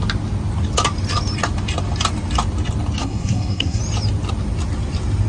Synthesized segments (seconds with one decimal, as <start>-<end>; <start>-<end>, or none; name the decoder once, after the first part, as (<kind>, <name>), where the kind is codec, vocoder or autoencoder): 3.0-3.8 (codec, SNAC)